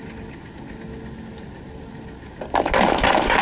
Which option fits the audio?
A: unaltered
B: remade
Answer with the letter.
A